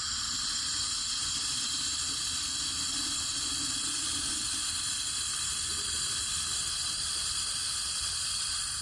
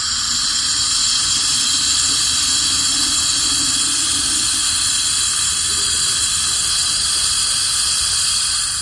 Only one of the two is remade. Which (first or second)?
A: first